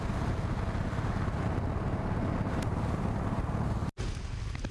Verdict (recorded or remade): recorded